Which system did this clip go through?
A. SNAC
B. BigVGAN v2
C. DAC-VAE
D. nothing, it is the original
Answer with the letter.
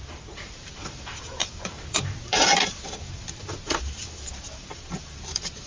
B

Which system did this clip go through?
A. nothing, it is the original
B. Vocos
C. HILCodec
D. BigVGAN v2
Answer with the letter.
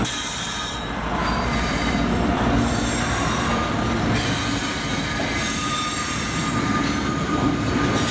D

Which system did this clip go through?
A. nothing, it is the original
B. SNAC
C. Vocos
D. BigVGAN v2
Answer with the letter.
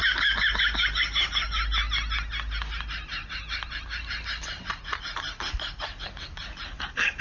A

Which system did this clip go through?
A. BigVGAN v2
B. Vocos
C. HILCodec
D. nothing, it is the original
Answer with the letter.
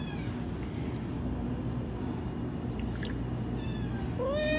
D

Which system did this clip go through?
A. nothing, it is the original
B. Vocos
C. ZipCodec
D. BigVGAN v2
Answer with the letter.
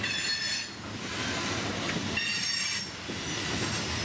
A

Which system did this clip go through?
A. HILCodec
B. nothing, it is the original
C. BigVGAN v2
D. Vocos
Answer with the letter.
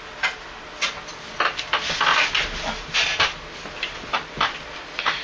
B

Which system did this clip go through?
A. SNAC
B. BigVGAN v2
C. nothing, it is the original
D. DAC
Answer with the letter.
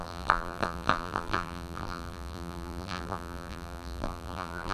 B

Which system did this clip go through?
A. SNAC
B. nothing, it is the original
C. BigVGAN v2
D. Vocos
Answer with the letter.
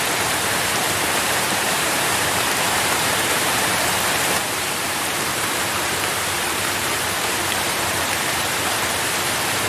C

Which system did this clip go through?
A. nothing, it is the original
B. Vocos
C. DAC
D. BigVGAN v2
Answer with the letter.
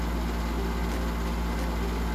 A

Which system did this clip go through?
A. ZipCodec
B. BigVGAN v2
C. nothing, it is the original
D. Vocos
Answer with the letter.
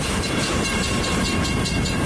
B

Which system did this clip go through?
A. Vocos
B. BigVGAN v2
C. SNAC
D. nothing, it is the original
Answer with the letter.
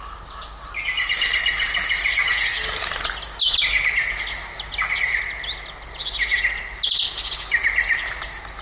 D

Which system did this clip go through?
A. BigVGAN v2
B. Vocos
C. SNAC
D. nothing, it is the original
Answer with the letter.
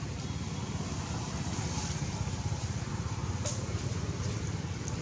A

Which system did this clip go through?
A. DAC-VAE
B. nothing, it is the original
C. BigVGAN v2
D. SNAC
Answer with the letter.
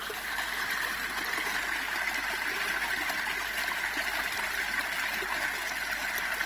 B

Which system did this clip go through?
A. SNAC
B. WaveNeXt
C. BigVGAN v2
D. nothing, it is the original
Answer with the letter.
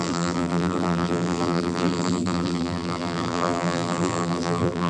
C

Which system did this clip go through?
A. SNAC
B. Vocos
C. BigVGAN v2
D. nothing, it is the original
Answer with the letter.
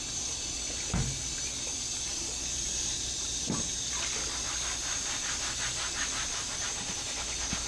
D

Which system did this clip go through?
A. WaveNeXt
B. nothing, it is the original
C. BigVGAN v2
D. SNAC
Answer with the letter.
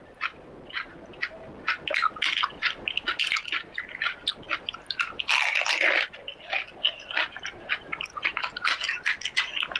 B